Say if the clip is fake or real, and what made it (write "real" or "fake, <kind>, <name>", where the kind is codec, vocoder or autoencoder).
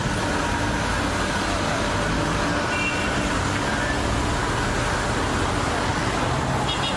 real